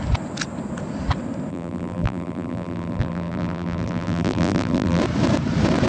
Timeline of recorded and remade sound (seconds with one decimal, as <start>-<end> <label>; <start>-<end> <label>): 0.0-1.5 recorded; 1.5-5.0 remade; 5.0-5.9 recorded